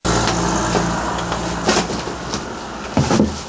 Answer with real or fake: real